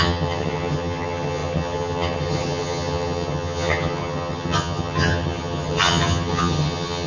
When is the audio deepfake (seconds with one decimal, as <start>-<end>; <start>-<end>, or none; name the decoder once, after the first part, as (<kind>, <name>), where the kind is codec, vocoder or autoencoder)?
0.0-7.1 (vocoder, HiFi-GAN)